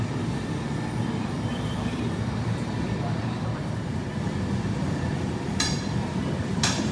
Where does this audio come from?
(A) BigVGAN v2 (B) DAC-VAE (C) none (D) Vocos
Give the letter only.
A